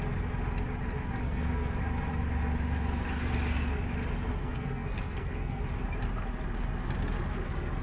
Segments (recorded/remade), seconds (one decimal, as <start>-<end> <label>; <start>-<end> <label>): 0.0-1.2 recorded; 1.2-1.8 remade; 1.8-4.4 recorded; 4.4-5.6 remade; 5.6-7.8 recorded